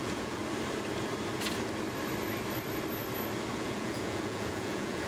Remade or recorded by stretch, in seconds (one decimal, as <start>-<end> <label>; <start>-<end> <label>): 0.0-0.4 remade; 0.4-3.5 recorded; 3.5-5.1 remade